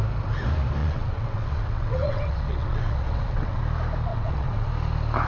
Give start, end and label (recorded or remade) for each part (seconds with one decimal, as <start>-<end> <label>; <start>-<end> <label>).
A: 0.0-0.8 recorded; 0.8-3.6 remade; 3.6-4.1 recorded; 4.1-4.7 remade; 4.7-5.3 recorded